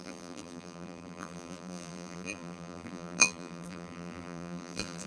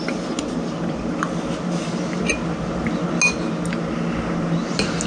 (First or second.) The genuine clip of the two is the second